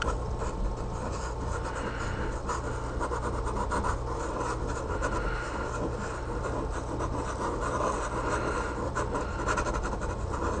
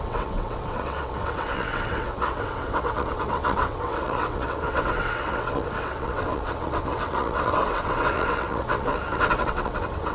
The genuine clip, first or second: first